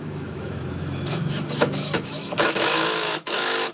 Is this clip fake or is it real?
fake